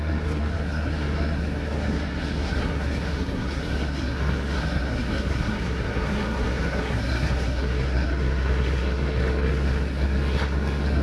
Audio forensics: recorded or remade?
remade